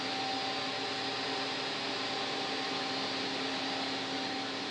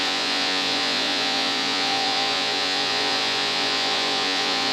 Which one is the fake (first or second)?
second